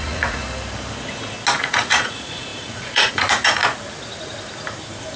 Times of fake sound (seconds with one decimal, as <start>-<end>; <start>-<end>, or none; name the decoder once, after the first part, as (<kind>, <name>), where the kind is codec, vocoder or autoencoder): 0.0-0.4 (vocoder, Vocos); 1.6-3.6